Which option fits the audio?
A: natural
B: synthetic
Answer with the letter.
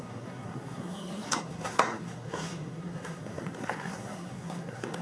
B